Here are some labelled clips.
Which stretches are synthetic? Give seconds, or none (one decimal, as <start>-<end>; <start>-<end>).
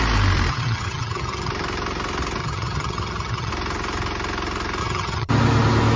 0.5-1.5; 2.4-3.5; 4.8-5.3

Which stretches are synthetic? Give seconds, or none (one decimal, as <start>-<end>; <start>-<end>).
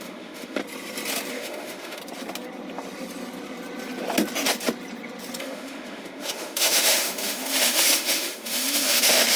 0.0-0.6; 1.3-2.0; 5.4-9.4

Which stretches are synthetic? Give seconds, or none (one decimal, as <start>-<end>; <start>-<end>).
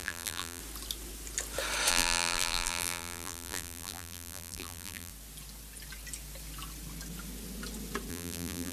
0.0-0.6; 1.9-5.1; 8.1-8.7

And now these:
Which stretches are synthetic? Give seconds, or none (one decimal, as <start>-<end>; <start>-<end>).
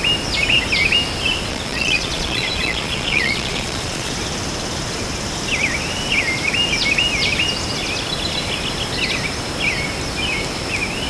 1.5-4.1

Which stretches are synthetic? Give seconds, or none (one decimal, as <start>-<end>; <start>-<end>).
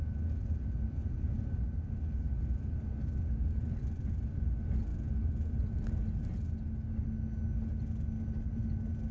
none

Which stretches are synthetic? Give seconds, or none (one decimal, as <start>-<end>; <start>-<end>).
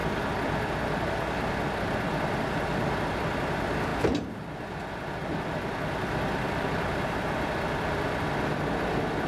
none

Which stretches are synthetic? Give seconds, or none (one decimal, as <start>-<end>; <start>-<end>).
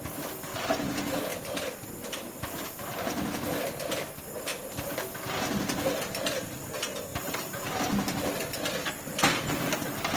none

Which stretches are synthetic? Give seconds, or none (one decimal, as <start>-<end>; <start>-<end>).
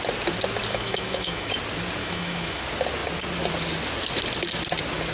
0.7-1.5; 2.0-2.6